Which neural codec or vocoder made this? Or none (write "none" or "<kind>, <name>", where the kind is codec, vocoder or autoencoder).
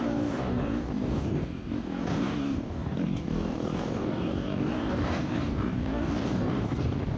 codec, DAC